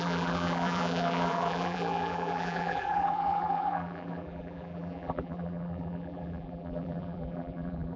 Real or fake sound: fake